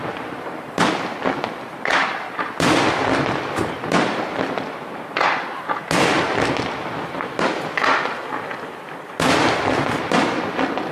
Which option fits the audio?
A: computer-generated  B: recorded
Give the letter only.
B